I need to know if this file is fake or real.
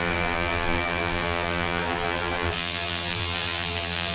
fake